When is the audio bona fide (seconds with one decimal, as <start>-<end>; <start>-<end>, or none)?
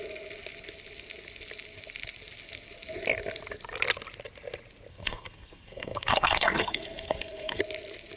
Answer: 0.0-4.9; 7.6-8.2